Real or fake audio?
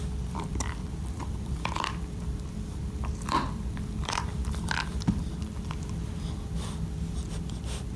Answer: fake